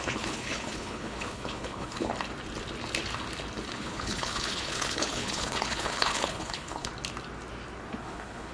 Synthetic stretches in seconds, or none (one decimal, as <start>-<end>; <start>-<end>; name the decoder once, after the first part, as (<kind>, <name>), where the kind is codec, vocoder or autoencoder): 0.0-2.1 (codec, HILCodec); 3.7-6.9; 8.0-8.5